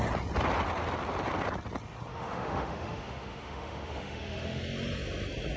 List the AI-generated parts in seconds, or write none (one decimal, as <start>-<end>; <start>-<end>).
2.1-4.6